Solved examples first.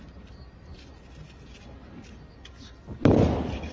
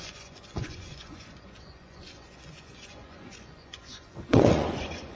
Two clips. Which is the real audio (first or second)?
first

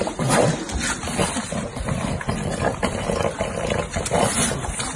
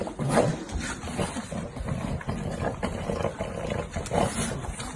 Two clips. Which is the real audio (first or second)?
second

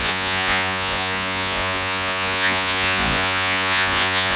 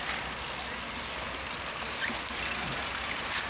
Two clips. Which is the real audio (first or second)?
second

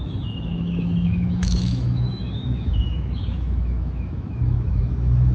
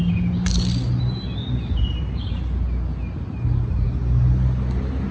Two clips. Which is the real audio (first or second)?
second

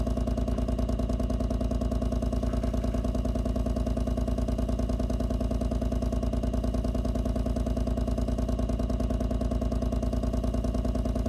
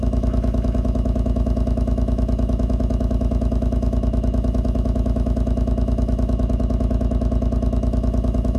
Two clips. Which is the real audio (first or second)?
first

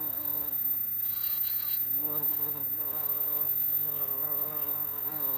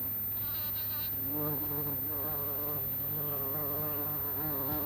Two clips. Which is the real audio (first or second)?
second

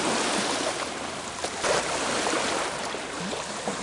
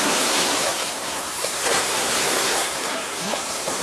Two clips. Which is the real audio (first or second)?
first